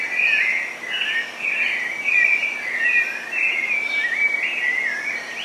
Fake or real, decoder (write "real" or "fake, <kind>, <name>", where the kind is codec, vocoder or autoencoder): real